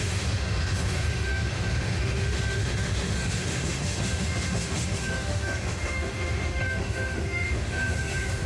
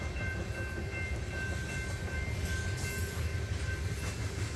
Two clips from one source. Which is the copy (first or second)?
first